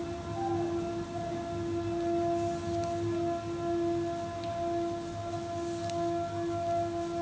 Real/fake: real